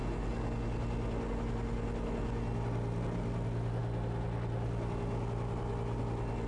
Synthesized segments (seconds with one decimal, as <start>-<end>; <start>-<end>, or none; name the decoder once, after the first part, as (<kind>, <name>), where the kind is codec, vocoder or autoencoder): none